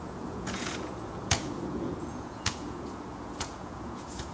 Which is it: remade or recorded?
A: remade